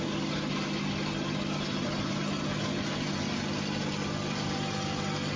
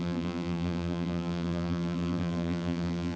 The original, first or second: first